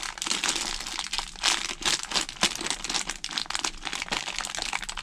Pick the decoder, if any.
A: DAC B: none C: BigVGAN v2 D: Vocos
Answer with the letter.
B